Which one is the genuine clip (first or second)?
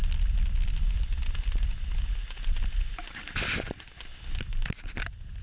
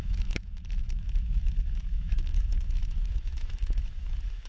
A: first